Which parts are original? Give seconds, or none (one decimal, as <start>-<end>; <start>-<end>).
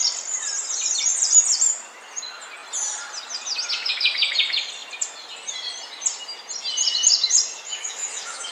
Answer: 0.0-7.7